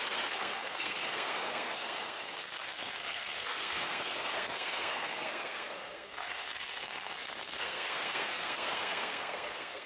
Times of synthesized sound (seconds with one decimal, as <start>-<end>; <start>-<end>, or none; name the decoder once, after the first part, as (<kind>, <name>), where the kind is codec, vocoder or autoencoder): 0.0-9.9 (codec, SNAC)